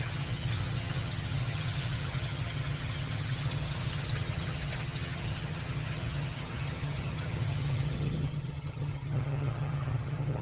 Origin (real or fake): fake